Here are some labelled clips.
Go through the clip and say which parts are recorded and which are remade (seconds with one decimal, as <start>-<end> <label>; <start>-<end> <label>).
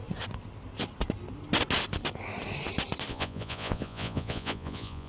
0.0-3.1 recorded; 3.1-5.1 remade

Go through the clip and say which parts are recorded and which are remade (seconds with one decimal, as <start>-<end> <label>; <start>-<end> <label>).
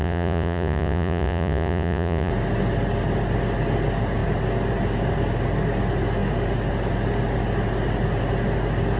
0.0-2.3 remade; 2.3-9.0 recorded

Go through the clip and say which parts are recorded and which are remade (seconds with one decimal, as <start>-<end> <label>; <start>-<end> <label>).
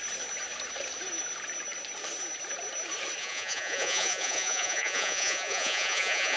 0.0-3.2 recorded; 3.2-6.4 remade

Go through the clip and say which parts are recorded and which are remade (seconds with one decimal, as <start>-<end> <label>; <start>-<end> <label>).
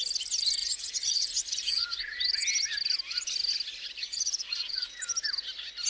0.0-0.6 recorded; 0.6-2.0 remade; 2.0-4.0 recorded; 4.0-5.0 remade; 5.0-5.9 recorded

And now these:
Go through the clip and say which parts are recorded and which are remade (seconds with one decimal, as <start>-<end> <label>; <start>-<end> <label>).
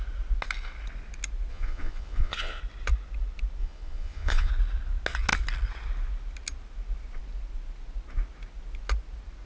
0.0-1.5 recorded; 1.5-2.6 remade; 2.6-3.6 recorded; 3.6-4.5 remade; 4.5-9.5 recorded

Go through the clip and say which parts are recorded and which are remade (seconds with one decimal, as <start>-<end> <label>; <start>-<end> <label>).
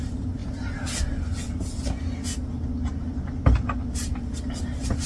0.0-5.1 recorded